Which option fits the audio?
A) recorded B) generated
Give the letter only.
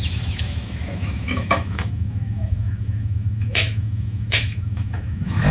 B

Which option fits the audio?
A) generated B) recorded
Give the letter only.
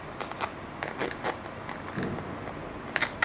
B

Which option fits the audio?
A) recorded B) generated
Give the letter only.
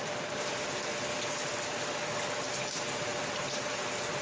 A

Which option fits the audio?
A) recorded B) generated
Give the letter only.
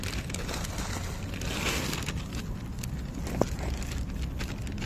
A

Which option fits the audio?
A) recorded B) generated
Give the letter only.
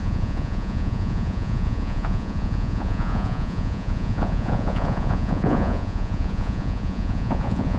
B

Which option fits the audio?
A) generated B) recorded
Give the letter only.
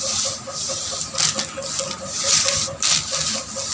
B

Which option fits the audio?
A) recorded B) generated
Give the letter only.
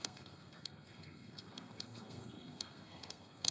B